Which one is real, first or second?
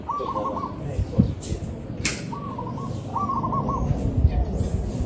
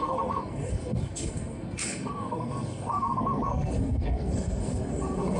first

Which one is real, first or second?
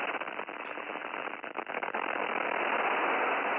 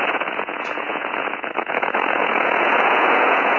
first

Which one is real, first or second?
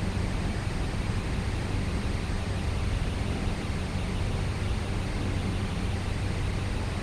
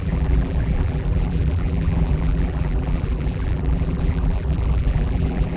first